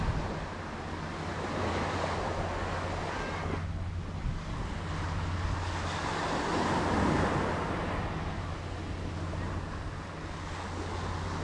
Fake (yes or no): no